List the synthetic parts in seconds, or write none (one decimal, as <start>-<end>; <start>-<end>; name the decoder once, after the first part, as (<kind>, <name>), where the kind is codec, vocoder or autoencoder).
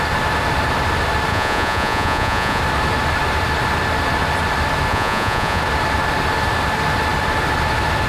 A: 1.3-2.6 (vocoder, Vocos); 4.9-5.6